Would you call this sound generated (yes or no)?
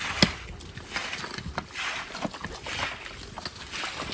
no